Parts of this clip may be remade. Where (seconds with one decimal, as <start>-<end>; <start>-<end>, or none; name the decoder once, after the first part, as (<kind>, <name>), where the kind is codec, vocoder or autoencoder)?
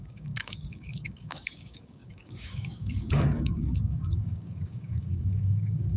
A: 0.0-6.0 (codec, DAC)